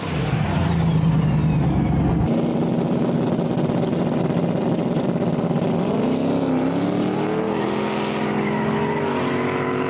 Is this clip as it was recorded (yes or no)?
yes